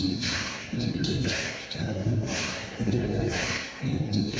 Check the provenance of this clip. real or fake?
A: fake